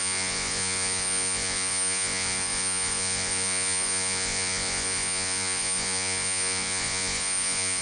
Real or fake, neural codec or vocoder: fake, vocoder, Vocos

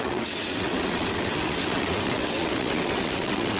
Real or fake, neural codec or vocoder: fake, vocoder, WaveNeXt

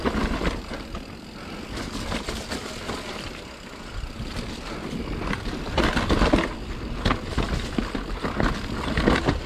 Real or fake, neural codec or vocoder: real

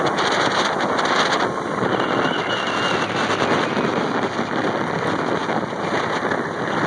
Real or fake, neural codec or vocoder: real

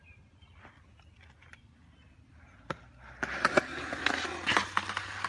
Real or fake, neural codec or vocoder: real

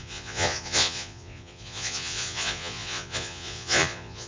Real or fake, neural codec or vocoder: fake, vocoder, Vocos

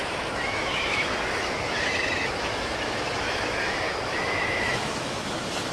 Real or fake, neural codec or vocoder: fake, autoencoder, DAC-VAE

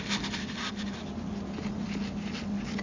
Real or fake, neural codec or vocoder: real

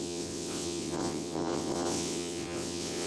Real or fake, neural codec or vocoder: fake, vocoder, WaveNeXt